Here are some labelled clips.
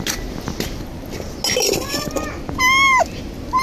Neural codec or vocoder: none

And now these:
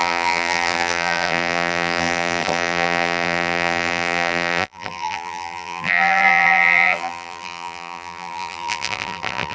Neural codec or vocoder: vocoder, BigVGAN v2